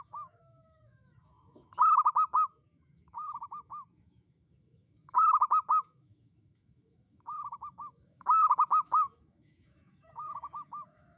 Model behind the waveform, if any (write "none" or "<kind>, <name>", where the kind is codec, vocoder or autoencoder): autoencoder, DAC-VAE